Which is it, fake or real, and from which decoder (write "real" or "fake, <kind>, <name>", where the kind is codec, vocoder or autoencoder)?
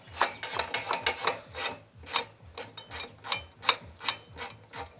real